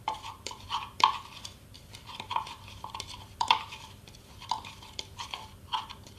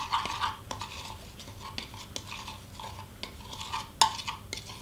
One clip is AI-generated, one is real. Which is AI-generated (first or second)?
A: first